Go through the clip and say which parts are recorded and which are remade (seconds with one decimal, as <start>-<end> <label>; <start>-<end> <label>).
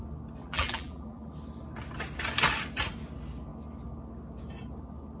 0.0-0.4 recorded; 0.4-1.3 remade; 1.3-5.2 recorded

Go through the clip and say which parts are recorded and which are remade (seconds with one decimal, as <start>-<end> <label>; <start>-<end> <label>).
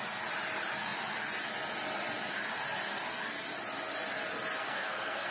0.0-4.6 recorded; 4.6-5.3 remade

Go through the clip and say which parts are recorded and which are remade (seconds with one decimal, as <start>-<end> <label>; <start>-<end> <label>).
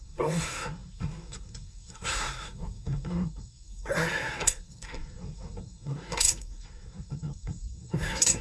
0.0-8.4 remade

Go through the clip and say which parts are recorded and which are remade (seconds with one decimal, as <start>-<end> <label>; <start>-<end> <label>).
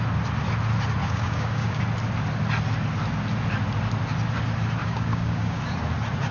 0.0-1.0 recorded; 1.0-1.8 remade; 1.8-4.8 recorded; 4.8-5.6 remade; 5.6-6.3 recorded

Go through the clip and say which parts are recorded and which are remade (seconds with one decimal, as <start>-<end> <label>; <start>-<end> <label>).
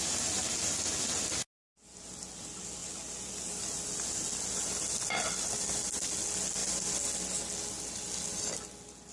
0.0-9.1 recorded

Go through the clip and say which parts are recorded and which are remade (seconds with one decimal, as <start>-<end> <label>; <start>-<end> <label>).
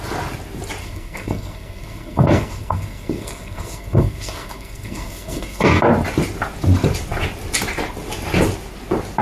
0.0-0.8 recorded; 0.8-5.8 remade; 5.8-9.2 recorded